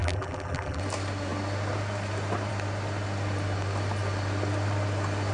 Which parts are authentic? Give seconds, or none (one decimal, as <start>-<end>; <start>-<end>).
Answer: 0.8-5.3